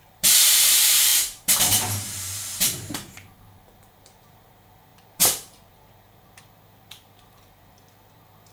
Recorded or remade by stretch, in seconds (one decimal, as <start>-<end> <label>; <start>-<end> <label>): 0.0-8.5 remade